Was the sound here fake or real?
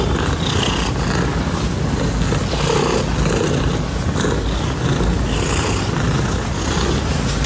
real